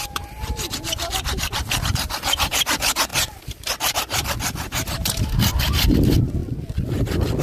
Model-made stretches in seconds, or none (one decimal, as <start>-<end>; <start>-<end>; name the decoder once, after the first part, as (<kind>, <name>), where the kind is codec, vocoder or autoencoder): 0.0-6.4 (vocoder, BigVGAN v2)